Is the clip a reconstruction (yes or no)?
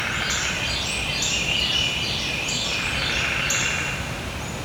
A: no